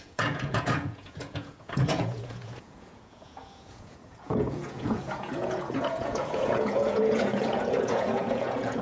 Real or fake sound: fake